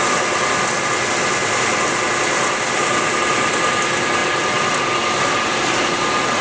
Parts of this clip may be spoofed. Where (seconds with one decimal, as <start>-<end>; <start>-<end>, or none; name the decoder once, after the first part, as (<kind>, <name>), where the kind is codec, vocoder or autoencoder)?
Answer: none

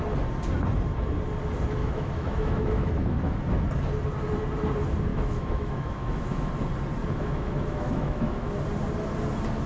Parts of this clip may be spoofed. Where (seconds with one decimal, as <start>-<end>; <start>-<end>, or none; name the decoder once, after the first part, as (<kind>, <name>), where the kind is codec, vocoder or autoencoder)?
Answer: 1.8-3.4 (autoencoder, DAC-VAE); 5.1-6.5; 7.0-8.5

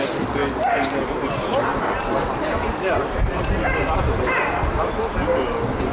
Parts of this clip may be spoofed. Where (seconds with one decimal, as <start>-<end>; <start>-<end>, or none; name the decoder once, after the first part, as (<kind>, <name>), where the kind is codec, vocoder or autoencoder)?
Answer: none

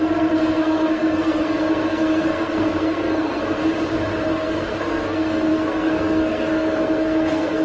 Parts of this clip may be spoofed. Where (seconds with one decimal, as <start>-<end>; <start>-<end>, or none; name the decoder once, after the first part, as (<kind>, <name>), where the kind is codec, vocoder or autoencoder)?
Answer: 0.0-3.6 (codec, SNAC); 4.3-7.6

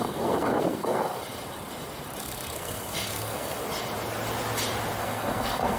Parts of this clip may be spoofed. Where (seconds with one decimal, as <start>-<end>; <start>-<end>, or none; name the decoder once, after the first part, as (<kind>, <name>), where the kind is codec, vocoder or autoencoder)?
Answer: 0.0-1.2 (codec, SNAC); 2.2-3.6; 5.0-5.8